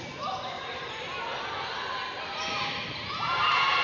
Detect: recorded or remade recorded